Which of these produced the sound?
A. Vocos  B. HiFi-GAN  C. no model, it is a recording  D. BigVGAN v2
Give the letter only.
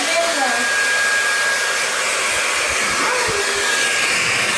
C